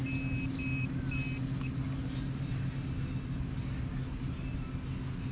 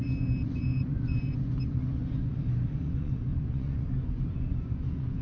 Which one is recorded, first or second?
first